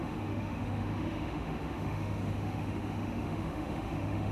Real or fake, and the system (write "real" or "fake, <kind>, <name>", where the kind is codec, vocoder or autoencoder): fake, autoencoder, DAC-VAE